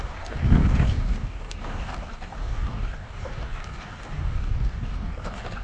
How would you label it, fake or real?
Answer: fake